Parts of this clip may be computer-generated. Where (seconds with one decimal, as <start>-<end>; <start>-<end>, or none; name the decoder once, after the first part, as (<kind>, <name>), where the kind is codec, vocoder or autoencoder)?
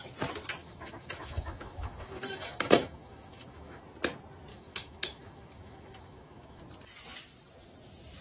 0.6-3.8 (autoencoder, DAC-VAE); 4.5-6.6